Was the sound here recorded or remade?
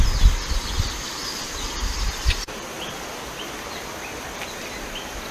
recorded